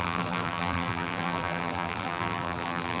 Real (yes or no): no